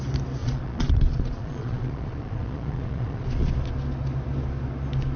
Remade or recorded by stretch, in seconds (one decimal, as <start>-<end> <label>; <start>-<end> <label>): 0.0-0.4 recorded; 0.4-3.5 remade; 3.5-5.2 recorded